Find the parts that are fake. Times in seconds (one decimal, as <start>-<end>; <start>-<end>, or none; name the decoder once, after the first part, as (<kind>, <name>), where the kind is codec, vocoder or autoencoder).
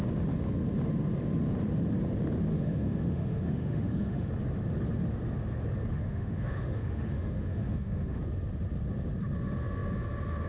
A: 2.5-4.3 (autoencoder, DAC-VAE); 5.9-8.2